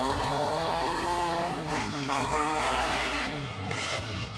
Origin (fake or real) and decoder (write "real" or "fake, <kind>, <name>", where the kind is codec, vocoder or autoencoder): fake, codec, SNAC